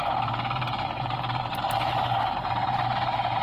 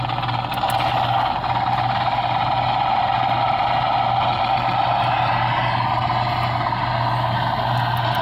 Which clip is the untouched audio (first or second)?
second